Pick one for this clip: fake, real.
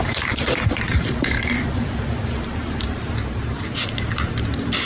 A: fake